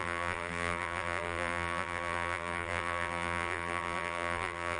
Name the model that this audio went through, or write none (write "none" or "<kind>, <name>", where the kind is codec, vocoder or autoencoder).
vocoder, BigVGAN v2